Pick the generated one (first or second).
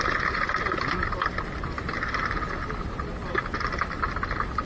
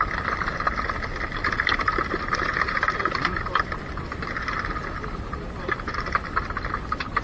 second